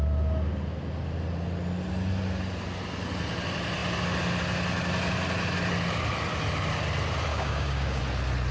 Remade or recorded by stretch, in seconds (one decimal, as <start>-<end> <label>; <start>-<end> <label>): 0.0-7.3 recorded; 7.3-8.0 remade; 8.0-8.5 recorded